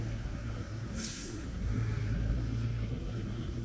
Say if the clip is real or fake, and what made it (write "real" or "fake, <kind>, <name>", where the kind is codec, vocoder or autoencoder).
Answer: fake, codec, SNAC